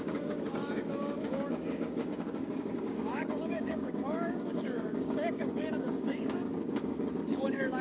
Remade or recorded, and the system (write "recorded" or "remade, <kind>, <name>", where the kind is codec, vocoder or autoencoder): remade, codec, DAC